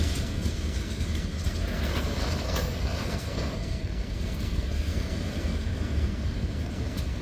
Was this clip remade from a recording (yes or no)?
yes